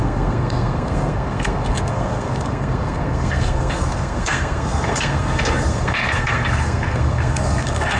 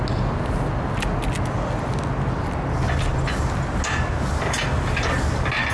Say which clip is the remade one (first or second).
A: first